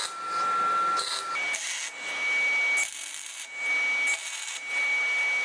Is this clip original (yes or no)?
yes